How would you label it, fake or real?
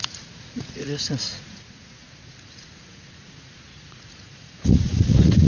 fake